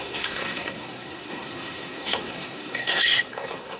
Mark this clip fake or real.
fake